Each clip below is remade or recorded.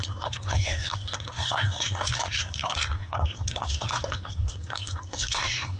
remade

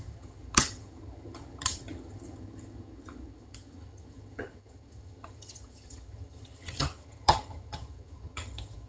remade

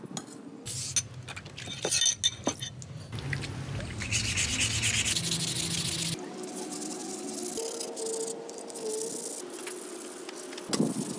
recorded